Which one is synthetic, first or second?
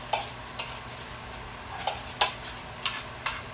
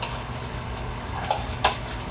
second